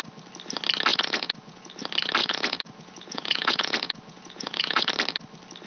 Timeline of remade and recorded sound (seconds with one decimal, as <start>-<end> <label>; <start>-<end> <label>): 0.0-0.9 recorded; 0.9-1.8 remade; 1.8-2.2 recorded; 2.2-4.9 remade; 4.9-5.7 recorded